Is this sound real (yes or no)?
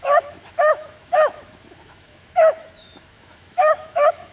no